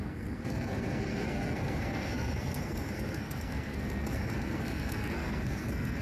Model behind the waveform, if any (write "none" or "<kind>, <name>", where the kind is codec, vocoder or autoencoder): codec, SNAC